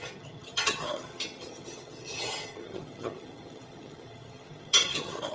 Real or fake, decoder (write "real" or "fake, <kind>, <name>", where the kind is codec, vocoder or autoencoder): fake, vocoder, HiFi-GAN